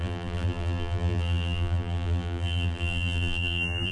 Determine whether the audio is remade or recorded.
remade